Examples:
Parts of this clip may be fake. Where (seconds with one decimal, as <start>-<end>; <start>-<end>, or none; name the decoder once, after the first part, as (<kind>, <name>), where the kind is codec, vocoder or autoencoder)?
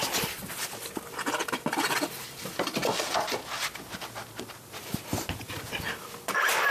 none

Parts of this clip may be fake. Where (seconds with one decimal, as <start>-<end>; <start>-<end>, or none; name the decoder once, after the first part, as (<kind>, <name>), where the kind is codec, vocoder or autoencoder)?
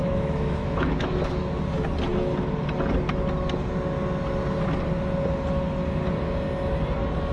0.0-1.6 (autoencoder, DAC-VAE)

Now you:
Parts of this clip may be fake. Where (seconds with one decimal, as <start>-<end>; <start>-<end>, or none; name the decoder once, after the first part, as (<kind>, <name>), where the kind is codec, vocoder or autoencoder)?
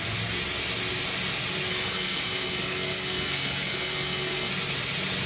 1.7-4.5 (codec, SNAC)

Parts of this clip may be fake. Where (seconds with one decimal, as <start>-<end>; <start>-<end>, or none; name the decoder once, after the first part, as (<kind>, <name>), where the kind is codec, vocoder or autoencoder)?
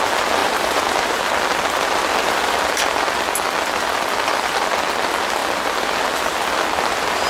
0.4-1.3 (vocoder, BigVGAN v2)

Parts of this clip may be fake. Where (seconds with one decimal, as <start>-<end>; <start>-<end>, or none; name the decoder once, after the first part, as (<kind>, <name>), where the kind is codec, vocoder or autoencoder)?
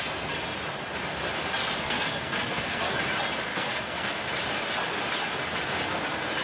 1.6-3.0 (codec, SNAC); 3.5-4.2